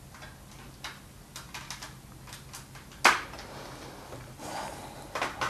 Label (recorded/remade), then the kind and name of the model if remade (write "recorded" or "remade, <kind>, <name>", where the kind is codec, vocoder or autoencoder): recorded